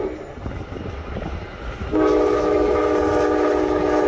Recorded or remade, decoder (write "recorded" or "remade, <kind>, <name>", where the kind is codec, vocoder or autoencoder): recorded